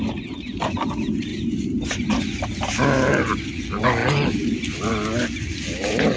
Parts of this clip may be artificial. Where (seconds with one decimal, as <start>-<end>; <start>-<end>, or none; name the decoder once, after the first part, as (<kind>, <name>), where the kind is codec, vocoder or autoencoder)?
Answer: none